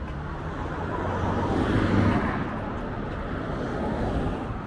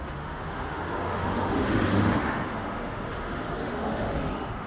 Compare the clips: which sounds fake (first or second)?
second